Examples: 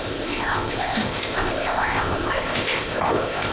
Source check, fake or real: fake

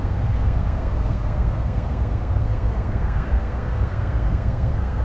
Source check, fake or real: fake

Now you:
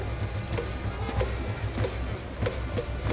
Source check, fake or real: real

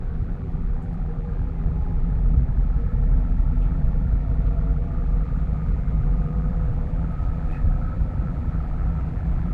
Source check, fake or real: fake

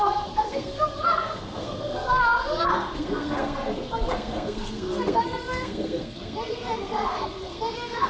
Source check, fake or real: fake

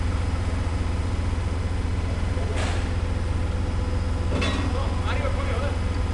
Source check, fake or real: real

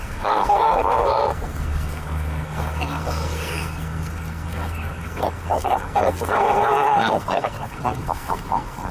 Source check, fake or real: fake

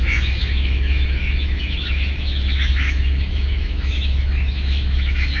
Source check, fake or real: fake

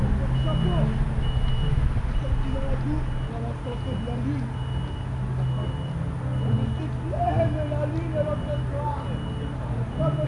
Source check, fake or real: real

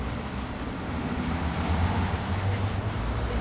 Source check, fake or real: real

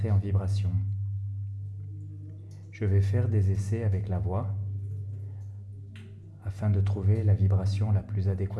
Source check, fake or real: real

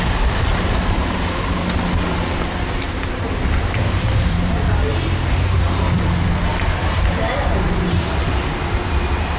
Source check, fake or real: fake